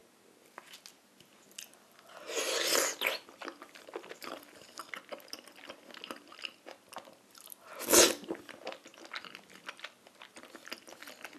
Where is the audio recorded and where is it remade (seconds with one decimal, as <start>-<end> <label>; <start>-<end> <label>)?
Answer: 0.0-11.4 recorded